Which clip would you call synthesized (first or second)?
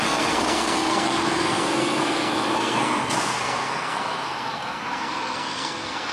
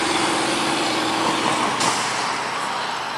first